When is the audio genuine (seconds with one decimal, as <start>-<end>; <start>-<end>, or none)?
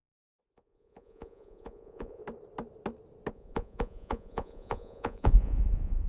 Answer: 2.2-3.3